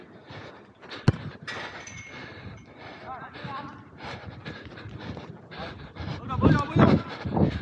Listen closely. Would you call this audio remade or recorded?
recorded